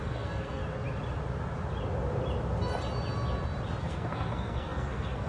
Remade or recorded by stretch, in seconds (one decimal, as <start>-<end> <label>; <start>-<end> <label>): 0.0-0.6 remade; 0.6-3.8 recorded; 3.8-5.3 remade